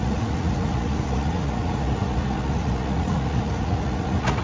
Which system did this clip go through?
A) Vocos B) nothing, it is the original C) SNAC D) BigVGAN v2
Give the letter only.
A